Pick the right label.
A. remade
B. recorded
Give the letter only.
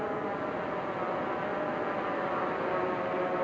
B